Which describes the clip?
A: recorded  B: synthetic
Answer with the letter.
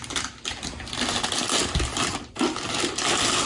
A